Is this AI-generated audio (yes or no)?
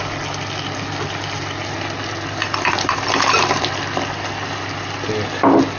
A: no